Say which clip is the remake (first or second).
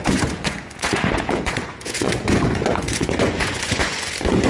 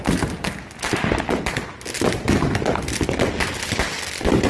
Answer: first